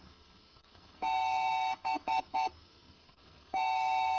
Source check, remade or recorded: remade